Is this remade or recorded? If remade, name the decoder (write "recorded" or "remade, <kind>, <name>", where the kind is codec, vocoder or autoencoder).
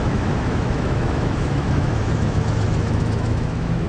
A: remade, autoencoder, DAC-VAE